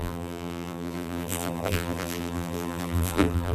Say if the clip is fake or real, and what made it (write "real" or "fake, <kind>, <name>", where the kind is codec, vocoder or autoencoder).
fake, vocoder, BigVGAN v2